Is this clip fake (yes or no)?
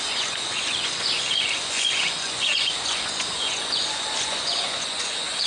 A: yes